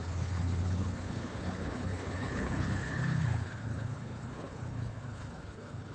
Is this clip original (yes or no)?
no